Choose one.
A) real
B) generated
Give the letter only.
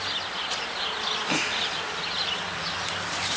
A